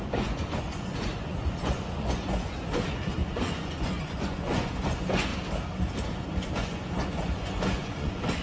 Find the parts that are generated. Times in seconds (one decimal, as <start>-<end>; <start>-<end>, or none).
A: 0.0-5.3; 6.0-8.4